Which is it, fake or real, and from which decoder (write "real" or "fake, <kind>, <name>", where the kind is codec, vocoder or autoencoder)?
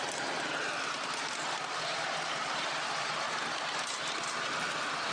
real